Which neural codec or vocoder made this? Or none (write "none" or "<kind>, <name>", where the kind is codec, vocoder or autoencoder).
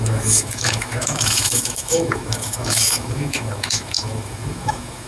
autoencoder, DAC-VAE